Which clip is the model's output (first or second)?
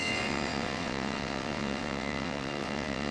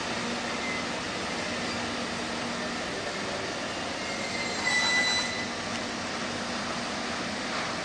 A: first